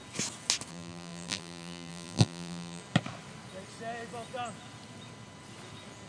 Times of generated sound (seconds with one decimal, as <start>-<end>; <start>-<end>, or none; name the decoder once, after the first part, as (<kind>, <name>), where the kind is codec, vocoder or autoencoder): 0.7-2.8 (vocoder, BigVGAN v2)